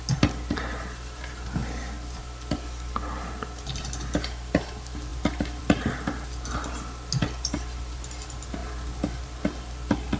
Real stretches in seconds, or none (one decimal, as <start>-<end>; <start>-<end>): 0.0-10.2